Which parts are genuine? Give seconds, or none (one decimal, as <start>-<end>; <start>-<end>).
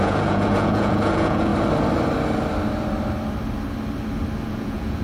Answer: 1.5-4.5